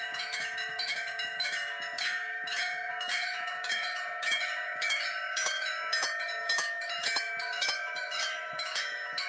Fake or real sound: fake